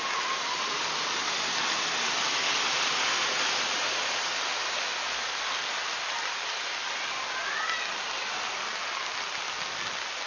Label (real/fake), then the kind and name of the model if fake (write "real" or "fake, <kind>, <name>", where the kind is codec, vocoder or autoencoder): real